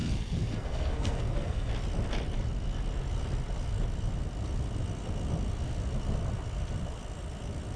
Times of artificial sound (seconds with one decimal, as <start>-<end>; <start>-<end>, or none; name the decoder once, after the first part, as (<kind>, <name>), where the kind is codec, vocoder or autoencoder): 0.0-1.7 (codec, SNAC)